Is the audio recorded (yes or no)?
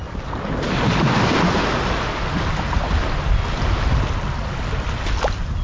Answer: yes